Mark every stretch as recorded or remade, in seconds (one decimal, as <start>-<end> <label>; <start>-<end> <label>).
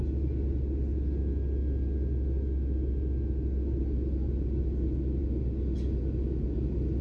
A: 0.0-7.0 recorded